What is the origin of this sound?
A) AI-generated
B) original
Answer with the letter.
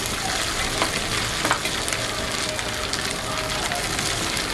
B